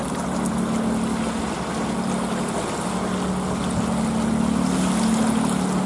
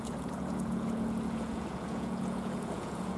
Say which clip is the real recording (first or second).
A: first